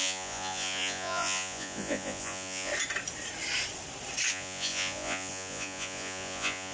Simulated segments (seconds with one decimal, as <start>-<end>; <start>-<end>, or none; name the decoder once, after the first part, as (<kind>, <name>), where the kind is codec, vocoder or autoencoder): 0.0-2.7 (vocoder, Vocos); 4.3-6.7